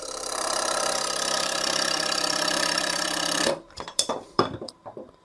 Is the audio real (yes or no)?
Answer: no